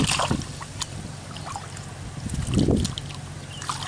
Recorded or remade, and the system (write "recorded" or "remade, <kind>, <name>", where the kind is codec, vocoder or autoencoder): recorded